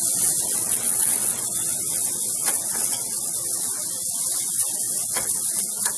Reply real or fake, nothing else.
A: fake